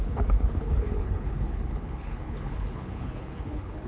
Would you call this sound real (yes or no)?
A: no